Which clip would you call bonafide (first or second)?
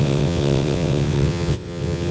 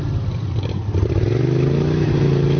second